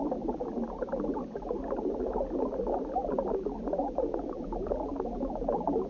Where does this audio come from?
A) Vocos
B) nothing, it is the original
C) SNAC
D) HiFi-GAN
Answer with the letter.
B